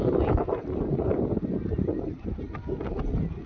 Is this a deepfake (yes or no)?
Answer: no